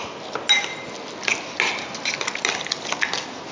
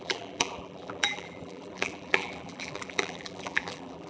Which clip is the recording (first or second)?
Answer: first